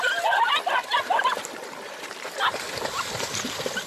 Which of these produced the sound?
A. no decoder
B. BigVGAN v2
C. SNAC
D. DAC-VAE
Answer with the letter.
B